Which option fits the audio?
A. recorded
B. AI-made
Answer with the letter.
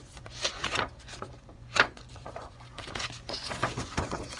B